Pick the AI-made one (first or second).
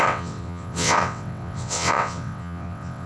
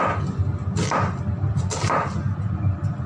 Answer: first